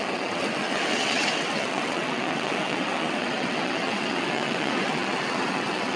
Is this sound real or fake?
fake